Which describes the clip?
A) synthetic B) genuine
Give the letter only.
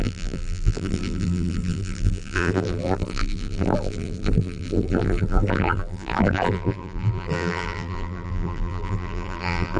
A